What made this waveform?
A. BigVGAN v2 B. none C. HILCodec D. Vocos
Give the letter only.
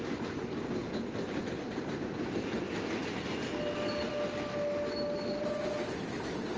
B